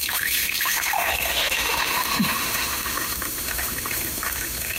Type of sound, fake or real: fake